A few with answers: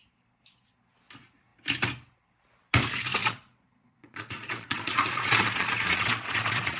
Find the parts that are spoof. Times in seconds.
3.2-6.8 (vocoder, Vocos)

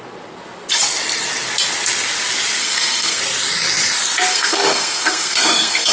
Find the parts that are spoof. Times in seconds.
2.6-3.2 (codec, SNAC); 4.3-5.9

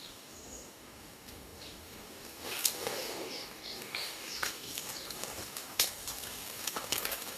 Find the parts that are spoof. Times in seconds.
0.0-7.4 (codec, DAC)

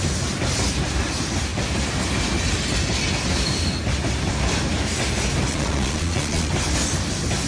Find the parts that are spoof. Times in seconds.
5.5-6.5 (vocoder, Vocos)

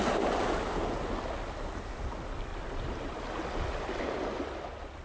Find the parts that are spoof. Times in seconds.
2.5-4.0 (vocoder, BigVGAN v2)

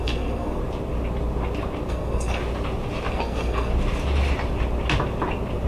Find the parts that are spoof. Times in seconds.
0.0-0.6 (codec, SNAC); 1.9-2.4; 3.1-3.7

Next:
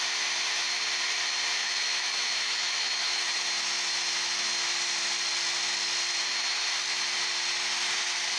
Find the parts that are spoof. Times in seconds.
1.6-3.3 (autoencoder, DAC-VAE)